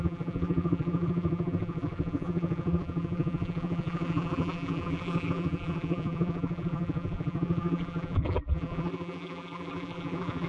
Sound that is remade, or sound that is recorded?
remade